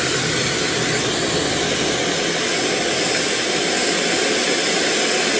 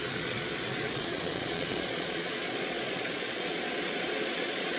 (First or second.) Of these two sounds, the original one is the first